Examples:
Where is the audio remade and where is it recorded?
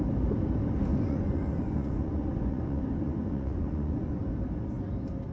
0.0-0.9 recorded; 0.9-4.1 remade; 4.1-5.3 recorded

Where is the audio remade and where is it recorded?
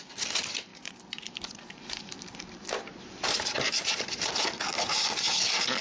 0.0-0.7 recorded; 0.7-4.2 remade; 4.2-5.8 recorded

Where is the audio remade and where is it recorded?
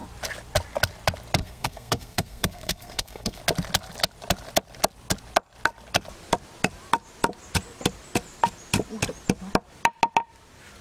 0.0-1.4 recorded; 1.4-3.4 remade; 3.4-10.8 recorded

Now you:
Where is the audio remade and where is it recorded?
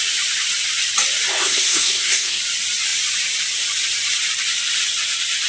0.0-1.3 recorded; 1.3-2.4 remade; 2.4-5.5 recorded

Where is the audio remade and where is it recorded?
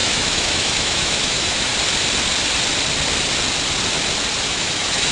0.0-1.7 remade; 1.7-4.4 recorded; 4.4-5.1 remade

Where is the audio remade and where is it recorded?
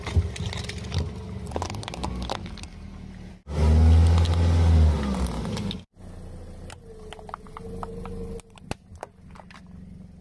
0.0-10.2 recorded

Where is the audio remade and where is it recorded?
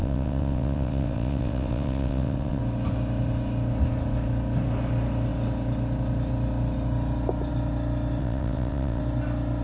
0.0-2.6 remade; 2.6-8.2 recorded; 8.2-9.0 remade; 9.0-9.6 recorded